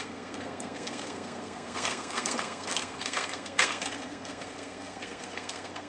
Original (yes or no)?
no